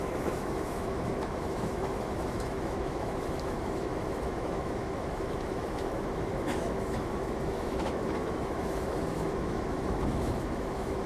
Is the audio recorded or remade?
remade